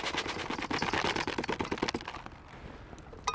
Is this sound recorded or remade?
recorded